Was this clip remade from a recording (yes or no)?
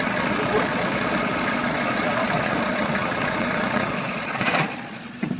yes